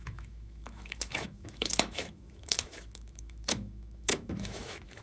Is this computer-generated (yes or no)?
yes